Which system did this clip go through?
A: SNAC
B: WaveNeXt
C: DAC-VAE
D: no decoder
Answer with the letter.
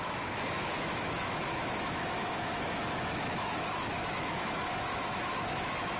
C